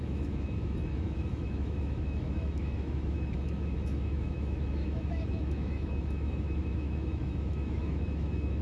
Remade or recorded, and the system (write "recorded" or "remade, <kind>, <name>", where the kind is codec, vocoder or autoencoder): remade, autoencoder, DAC-VAE